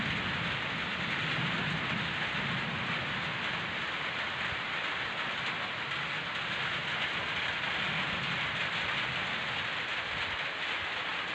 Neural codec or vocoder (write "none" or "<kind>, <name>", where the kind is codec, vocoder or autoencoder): none